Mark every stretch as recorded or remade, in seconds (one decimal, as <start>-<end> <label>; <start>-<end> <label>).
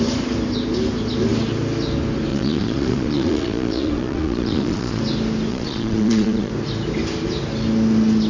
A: 0.0-2.3 recorded; 2.3-5.0 remade; 5.0-5.5 recorded; 5.5-6.5 remade; 6.5-8.3 recorded